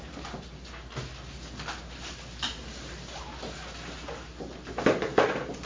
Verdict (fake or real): real